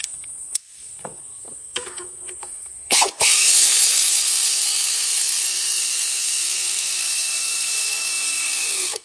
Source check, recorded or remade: remade